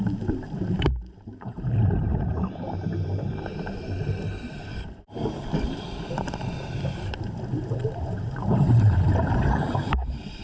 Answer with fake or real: fake